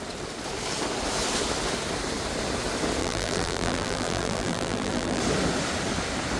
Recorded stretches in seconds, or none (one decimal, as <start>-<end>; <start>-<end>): 0.0-3.0; 5.2-6.4